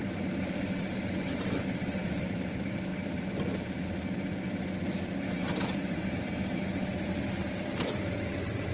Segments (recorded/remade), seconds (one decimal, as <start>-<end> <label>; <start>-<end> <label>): 0.0-2.9 remade; 2.9-5.3 recorded; 5.3-8.7 remade